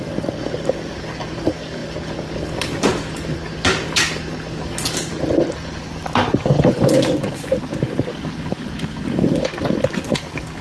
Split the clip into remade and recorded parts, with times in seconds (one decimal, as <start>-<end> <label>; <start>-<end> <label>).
0.0-5.1 remade; 5.1-5.8 recorded; 5.8-9.5 remade; 9.5-10.0 recorded; 10.0-10.6 remade

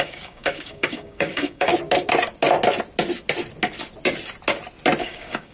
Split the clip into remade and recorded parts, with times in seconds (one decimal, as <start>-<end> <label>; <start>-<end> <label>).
0.0-1.7 remade; 1.7-5.0 recorded; 5.0-5.5 remade

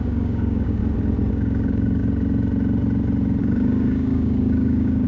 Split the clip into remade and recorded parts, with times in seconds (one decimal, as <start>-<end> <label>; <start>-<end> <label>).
0.0-0.8 remade; 0.8-1.3 recorded; 1.3-2.0 remade; 2.0-3.4 recorded; 3.4-5.1 remade

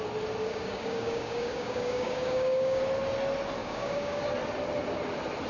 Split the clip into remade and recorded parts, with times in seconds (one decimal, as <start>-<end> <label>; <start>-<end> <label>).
0.0-0.4 recorded; 0.4-2.8 remade; 2.8-3.6 recorded; 3.6-4.2 remade; 4.2-5.5 recorded

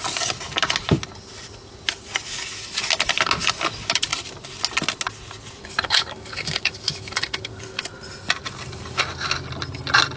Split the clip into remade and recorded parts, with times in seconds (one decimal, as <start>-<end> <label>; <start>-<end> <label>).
0.0-5.6 recorded; 5.6-7.8 remade; 7.8-10.2 recorded

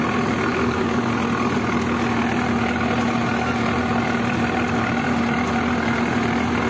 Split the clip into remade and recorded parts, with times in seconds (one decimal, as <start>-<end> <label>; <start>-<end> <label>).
0.0-0.5 recorded; 0.5-1.1 remade; 1.1-6.7 recorded

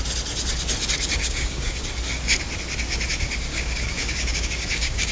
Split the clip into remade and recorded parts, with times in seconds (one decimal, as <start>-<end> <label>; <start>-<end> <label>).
0.0-1.2 recorded; 1.2-1.8 remade; 1.8-3.5 recorded; 3.5-5.1 remade

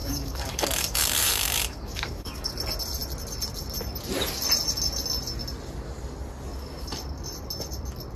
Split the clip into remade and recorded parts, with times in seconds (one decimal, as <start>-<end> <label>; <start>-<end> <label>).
0.0-2.5 remade; 2.5-8.2 recorded